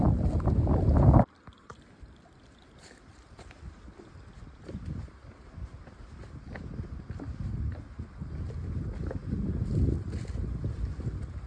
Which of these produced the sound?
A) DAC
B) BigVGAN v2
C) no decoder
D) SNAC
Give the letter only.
C